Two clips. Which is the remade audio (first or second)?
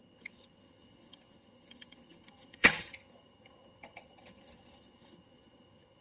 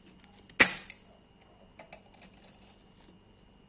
first